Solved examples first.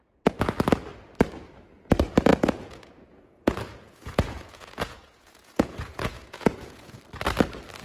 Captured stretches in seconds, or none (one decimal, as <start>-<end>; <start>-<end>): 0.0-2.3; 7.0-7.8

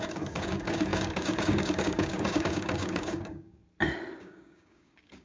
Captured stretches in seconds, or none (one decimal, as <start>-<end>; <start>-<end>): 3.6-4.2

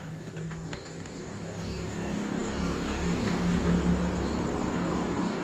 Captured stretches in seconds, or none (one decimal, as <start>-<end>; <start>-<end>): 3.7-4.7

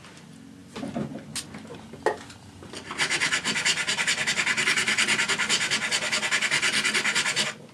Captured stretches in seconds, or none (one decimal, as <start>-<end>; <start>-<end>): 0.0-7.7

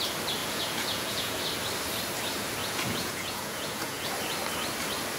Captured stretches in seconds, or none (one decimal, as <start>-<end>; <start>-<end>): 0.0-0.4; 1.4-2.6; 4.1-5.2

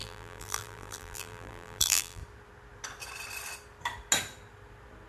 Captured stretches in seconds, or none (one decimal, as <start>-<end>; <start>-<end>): 2.2-5.1